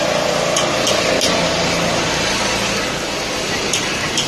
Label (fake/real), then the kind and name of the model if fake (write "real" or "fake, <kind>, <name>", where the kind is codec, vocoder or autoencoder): real